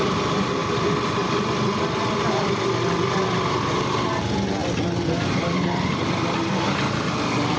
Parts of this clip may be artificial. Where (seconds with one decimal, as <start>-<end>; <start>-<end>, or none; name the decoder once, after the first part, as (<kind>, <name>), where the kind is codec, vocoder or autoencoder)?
0.6-4.0 (vocoder, BigVGAN v2); 4.6-7.6